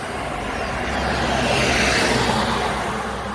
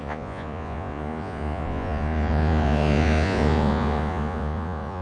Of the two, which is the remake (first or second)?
second